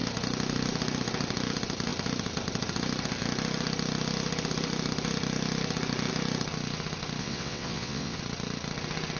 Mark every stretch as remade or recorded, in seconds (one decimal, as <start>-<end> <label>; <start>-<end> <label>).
0.0-7.2 recorded; 7.2-8.2 remade; 8.2-9.2 recorded